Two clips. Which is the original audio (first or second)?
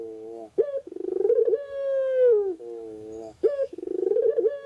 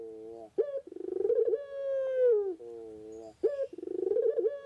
second